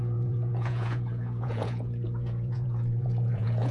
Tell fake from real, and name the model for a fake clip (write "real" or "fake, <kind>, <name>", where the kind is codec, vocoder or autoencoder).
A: fake, vocoder, Vocos